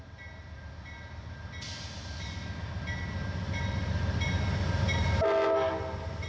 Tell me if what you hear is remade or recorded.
recorded